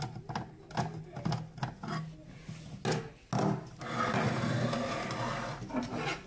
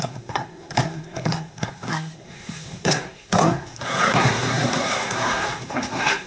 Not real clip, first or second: second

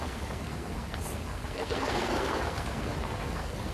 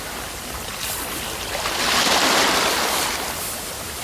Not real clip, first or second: first